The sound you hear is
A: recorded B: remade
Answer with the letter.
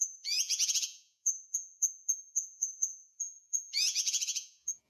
B